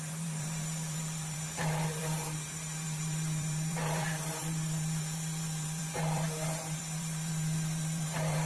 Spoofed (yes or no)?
yes